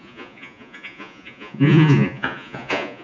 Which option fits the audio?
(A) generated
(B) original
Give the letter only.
A